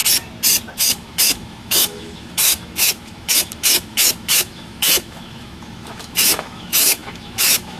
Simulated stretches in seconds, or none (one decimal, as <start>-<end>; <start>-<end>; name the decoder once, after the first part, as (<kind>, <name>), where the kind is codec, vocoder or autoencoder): 0.8-7.8 (autoencoder, DAC-VAE)